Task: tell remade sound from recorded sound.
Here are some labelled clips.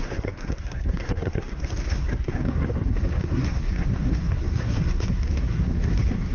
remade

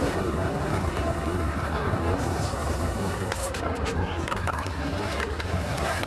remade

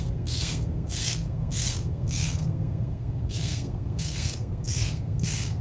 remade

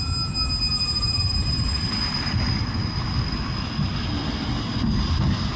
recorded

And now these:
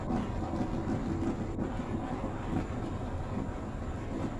recorded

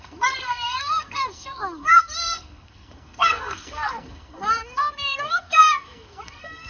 remade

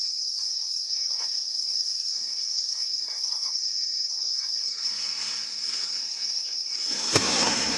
remade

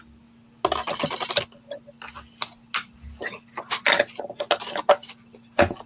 recorded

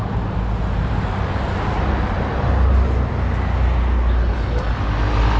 recorded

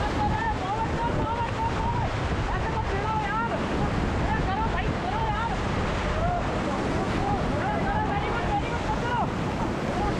recorded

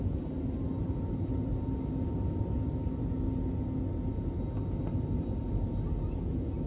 recorded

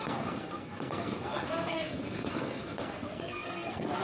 remade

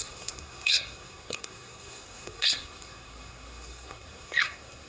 remade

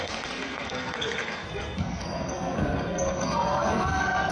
remade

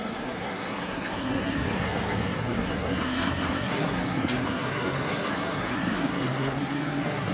remade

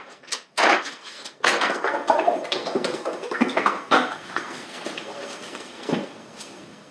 remade